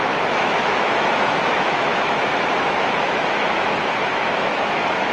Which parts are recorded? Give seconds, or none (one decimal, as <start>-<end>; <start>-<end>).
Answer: none